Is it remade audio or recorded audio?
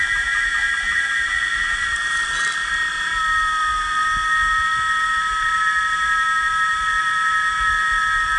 recorded